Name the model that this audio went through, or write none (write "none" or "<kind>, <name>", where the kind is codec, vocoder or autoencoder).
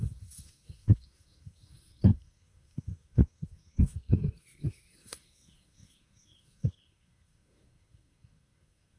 codec, SNAC